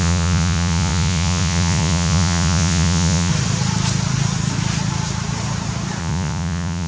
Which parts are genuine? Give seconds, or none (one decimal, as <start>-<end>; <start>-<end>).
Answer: 3.3-6.0